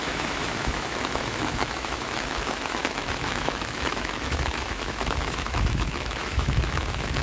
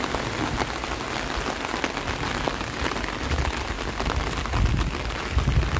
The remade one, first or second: first